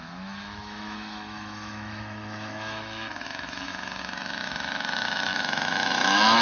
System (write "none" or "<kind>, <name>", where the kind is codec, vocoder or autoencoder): autoencoder, DAC-VAE